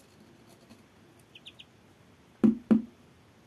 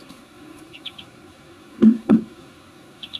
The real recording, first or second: first